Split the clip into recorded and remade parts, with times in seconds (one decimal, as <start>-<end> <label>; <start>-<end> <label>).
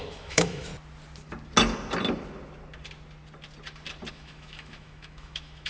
0.0-0.7 remade; 0.7-4.1 recorded; 4.1-5.7 remade